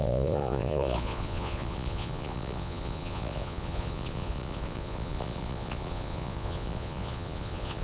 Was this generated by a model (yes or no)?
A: yes